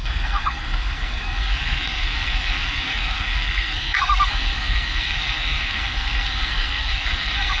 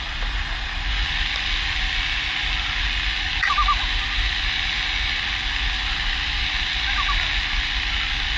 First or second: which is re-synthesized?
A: first